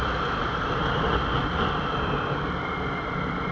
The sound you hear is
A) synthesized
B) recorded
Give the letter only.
B